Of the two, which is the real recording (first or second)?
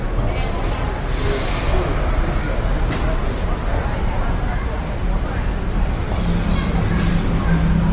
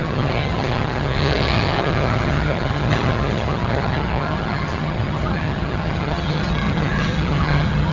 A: first